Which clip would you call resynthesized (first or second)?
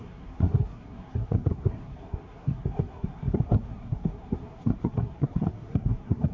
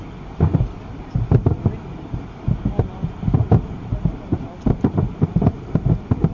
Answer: first